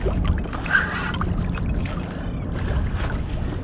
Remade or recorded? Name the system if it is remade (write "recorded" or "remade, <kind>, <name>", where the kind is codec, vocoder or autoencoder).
recorded